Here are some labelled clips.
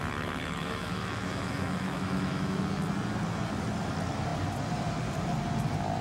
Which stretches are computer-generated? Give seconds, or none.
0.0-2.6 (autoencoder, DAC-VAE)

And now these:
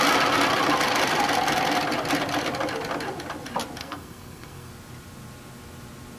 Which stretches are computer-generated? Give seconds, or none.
3.8-4.7 (codec, SNAC)

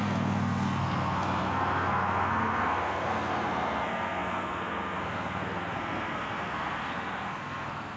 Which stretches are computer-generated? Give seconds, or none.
0.0-8.0 (codec, SNAC)

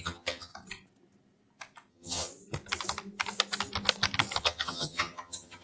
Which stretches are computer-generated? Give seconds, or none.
0.0-0.5 (vocoder, HiFi-GAN); 1.9-2.3; 4.4-5.6